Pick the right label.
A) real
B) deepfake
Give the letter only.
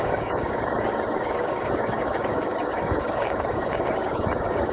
B